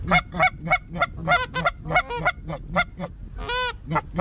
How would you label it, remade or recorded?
recorded